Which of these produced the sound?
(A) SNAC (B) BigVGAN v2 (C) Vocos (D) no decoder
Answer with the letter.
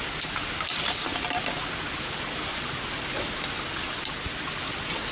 D